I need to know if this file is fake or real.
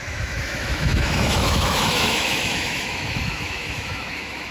fake